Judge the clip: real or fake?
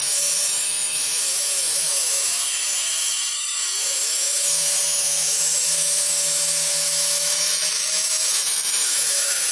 fake